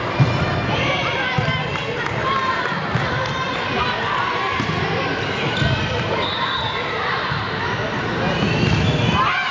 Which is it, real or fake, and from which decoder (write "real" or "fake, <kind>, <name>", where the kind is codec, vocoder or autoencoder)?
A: real